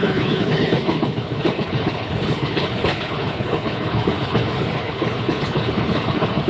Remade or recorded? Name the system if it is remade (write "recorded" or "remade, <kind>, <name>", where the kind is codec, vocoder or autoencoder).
remade, codec, HILCodec